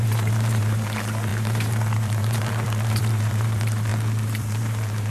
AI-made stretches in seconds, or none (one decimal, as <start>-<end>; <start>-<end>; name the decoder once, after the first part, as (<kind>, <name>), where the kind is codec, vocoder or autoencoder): 0.0-3.9 (vocoder, BigVGAN v2); 4.4-5.1